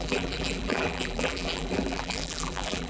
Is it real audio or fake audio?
fake